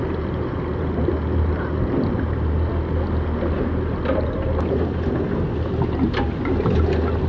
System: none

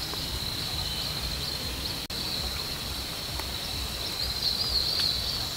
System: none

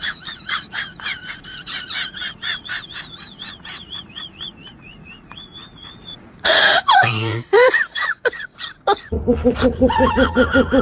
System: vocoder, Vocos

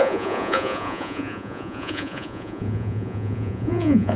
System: vocoder, Vocos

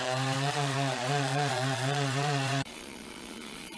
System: vocoder, Vocos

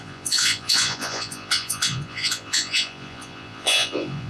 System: vocoder, Vocos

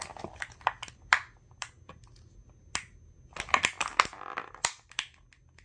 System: none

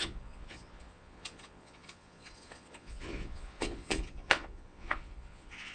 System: vocoder, Vocos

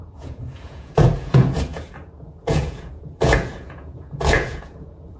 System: vocoder, Vocos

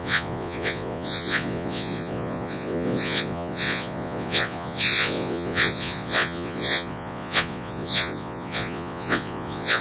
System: vocoder, Vocos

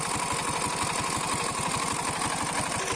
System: none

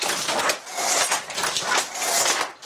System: none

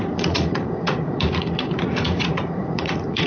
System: vocoder, Vocos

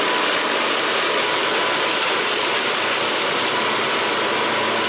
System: none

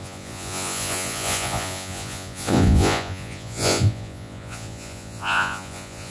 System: vocoder, Vocos